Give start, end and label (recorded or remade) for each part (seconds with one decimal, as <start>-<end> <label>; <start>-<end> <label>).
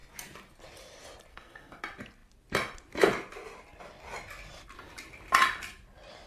0.0-1.3 recorded; 1.3-1.8 remade; 1.8-6.3 recorded